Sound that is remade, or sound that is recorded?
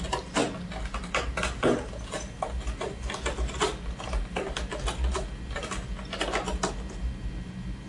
recorded